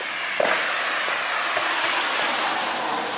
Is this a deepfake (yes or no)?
no